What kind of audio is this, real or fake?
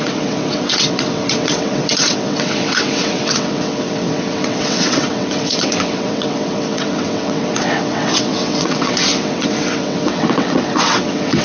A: fake